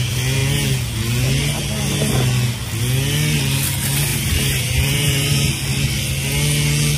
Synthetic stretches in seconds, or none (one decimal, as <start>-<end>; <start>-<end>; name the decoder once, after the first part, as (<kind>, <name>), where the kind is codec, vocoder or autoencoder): 4.1-5.5 (vocoder, BigVGAN v2)